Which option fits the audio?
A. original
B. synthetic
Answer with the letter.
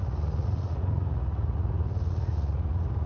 B